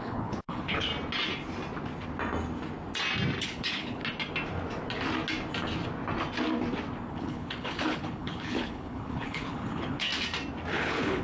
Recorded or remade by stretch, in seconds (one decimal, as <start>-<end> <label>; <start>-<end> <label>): 0.0-0.9 remade; 0.9-3.4 recorded; 3.4-4.0 remade; 4.0-7.1 recorded; 7.1-10.1 remade; 10.1-10.7 recorded; 10.7-11.2 remade